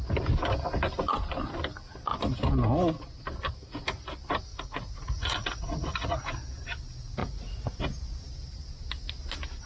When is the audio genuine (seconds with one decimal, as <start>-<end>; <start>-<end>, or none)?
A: 0.0-4.5; 6.2-7.2; 7.8-9.7